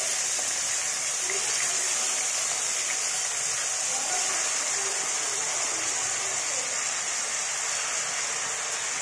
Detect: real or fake real